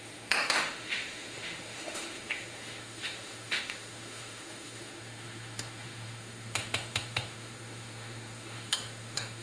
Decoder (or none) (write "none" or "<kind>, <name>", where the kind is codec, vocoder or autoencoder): autoencoder, DAC-VAE